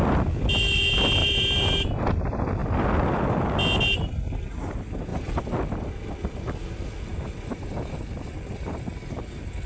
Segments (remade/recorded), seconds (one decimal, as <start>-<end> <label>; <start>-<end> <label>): 0.0-1.2 recorded; 1.2-2.0 remade; 2.0-7.1 recorded; 7.1-8.9 remade; 8.9-9.7 recorded